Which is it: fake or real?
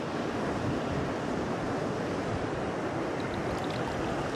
real